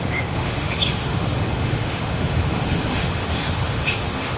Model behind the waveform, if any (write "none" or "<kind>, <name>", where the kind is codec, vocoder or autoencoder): autoencoder, DAC-VAE